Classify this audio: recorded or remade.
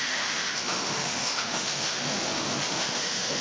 remade